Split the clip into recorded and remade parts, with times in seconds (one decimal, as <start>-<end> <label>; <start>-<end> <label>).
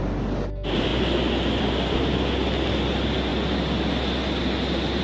0.0-5.0 recorded